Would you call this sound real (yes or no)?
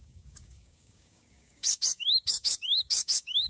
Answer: no